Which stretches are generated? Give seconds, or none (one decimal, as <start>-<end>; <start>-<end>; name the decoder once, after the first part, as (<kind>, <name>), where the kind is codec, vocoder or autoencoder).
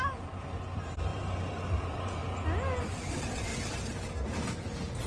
0.0-2.2 (vocoder, BigVGAN v2); 2.8-3.5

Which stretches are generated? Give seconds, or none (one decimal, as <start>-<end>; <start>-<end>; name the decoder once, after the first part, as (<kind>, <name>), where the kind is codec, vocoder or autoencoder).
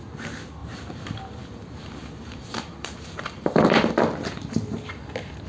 0.6-3.9 (vocoder, BigVGAN v2)